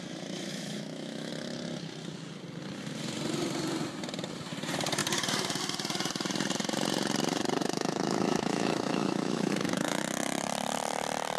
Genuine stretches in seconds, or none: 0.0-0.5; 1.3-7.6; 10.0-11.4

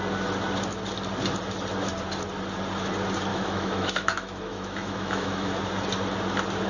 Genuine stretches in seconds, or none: 0.0-3.3; 5.5-6.7

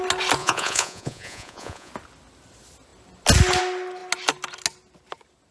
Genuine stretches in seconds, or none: 0.0-0.4; 1.9-5.5

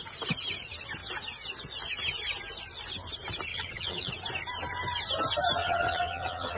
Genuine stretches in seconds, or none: 0.0-3.5; 4.1-5.6

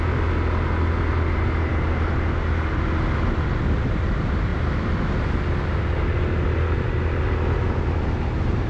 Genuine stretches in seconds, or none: 0.0-8.7